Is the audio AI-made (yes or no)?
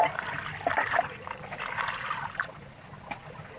no